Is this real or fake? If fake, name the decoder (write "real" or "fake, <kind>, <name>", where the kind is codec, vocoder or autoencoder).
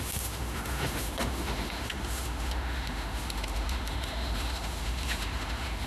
fake, autoencoder, DAC-VAE